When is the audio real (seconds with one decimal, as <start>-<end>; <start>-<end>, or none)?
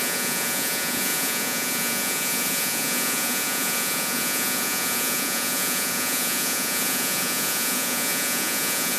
none